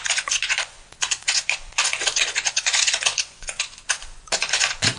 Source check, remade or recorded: remade